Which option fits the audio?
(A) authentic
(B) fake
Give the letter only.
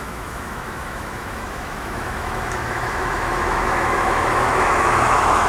B